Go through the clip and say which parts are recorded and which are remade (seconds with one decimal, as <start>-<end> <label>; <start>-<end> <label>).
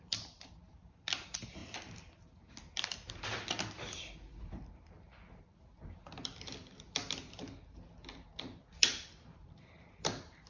0.0-10.5 recorded